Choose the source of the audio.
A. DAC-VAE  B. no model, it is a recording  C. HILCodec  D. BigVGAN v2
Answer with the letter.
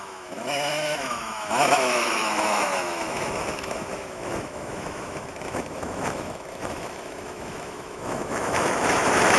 A